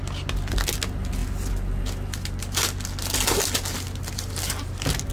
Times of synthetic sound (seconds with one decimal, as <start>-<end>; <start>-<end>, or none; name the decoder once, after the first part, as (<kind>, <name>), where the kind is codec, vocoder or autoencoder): none